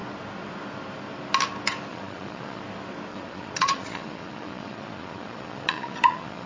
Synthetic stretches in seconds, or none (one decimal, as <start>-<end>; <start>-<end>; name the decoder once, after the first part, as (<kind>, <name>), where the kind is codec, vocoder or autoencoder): 1.9-2.6 (vocoder, Vocos); 3.1-6.5